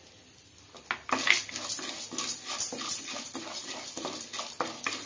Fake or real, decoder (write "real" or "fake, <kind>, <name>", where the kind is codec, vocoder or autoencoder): real